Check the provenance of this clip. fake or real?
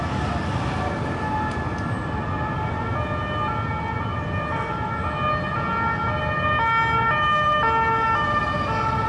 real